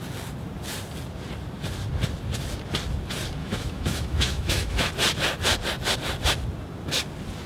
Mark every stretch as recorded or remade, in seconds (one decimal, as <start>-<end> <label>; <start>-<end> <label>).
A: 0.0-3.4 recorded; 3.4-4.9 remade; 4.9-7.5 recorded